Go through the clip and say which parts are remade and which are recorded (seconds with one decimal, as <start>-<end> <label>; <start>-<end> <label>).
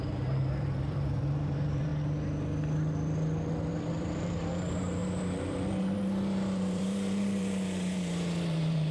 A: 0.0-1.9 remade; 1.9-3.7 recorded; 3.7-8.9 remade